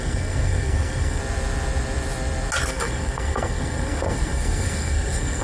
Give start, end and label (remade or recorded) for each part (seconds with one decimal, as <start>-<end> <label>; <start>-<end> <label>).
0.0-1.2 remade; 1.2-2.7 recorded; 2.7-5.4 remade